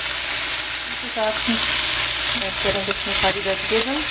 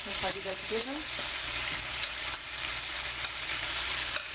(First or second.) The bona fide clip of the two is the first